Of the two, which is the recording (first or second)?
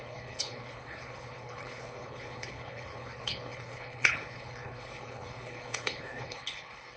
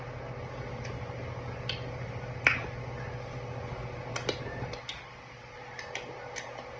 second